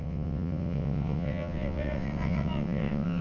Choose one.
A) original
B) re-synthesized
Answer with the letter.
B